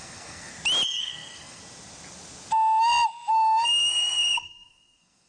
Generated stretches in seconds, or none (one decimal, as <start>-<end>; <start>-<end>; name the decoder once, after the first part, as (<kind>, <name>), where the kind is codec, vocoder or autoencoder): 0.0-0.5 (codec, SNAC); 1.0-1.6; 3.3-5.3

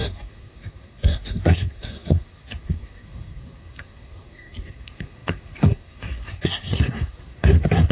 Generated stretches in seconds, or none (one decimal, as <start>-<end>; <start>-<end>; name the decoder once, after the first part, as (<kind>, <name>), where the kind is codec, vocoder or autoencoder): 0.0-7.9 (codec, SNAC)

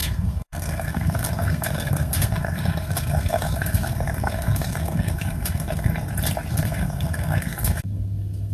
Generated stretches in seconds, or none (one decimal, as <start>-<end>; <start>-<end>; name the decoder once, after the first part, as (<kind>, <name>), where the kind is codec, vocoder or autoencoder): 0.0-5.9 (codec, SNAC); 6.5-8.5

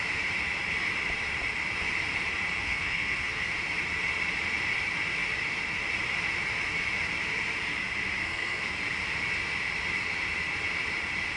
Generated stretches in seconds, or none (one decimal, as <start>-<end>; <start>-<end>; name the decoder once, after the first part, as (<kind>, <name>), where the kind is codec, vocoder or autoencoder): 2.6-3.5 (codec, SNAC); 8.2-8.7

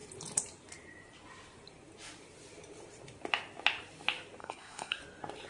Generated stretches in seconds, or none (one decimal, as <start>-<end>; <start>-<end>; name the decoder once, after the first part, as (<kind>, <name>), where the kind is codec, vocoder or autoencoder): 4.4-5.0 (codec, SNAC)